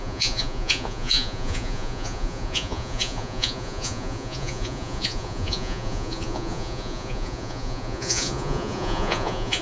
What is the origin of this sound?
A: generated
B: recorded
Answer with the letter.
A